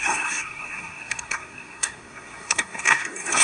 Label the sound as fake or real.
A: fake